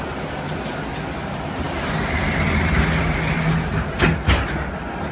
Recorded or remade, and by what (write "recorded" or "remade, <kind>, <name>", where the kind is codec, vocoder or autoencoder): recorded